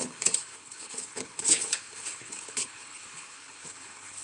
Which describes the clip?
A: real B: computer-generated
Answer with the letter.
B